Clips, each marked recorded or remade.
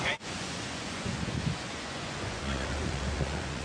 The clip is remade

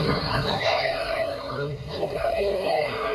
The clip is remade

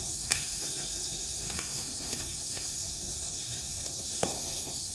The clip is remade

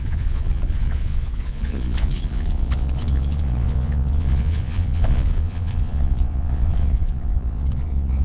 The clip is remade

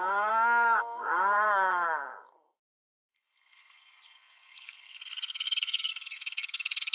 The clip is remade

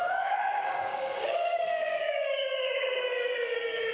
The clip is remade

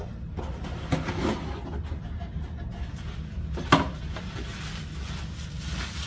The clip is recorded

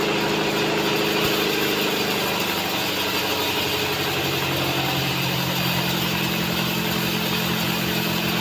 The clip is recorded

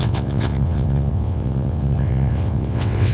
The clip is remade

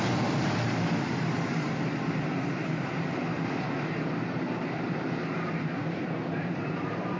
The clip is remade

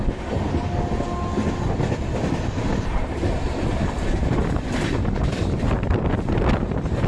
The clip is recorded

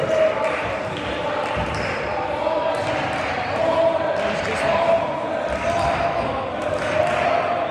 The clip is recorded